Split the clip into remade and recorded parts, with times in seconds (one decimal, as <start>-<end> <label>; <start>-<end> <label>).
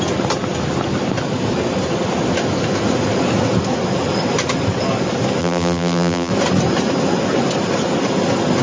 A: 0.0-5.4 recorded; 5.4-6.3 remade; 6.3-8.6 recorded